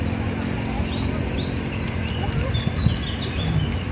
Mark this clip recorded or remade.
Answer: recorded